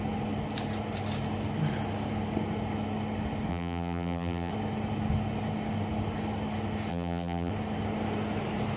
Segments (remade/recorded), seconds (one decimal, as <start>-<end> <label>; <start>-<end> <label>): 0.0-3.5 recorded; 3.5-4.5 remade; 4.5-6.9 recorded; 6.9-7.5 remade; 7.5-8.8 recorded